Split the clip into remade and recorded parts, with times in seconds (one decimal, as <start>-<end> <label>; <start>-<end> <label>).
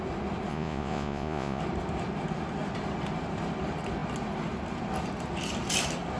0.0-0.5 recorded; 0.5-1.6 remade; 1.6-6.2 recorded